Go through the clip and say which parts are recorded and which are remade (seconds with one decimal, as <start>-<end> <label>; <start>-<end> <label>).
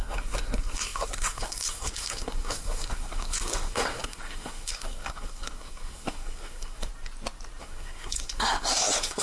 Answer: 0.0-6.9 remade; 6.9-7.6 recorded; 7.6-9.2 remade